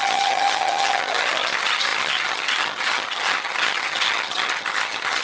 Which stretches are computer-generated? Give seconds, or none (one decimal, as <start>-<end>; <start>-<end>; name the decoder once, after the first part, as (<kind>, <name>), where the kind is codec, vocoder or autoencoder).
0.0-5.2 (vocoder, HiFi-GAN)